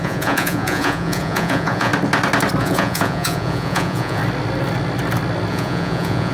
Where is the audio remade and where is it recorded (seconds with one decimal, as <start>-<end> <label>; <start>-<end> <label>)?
0.0-1.9 remade; 1.9-2.6 recorded; 2.6-4.2 remade; 4.2-5.5 recorded; 5.5-6.3 remade